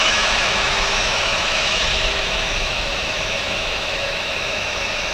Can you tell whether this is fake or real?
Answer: fake